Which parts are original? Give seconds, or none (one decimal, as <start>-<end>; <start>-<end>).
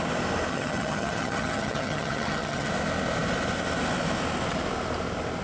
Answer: 0.0-0.5; 2.7-5.4